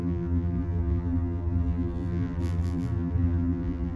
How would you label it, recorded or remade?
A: remade